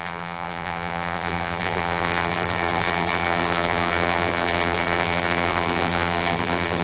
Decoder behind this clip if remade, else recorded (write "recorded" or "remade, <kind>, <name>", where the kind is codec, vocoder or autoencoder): remade, vocoder, BigVGAN v2